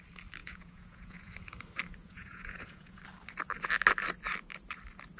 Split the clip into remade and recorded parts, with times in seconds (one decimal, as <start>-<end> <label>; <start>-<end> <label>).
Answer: 0.0-0.4 recorded; 0.4-1.3 remade; 1.3-2.0 recorded; 2.0-3.0 remade; 3.0-5.2 recorded